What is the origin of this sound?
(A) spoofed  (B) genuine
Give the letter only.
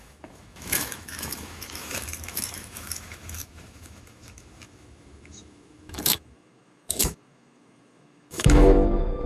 A